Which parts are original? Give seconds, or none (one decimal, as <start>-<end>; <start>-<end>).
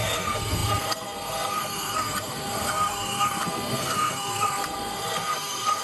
none